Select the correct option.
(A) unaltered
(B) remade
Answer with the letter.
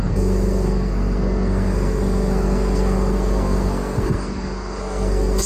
B